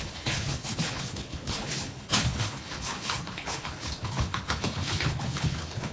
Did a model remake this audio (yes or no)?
yes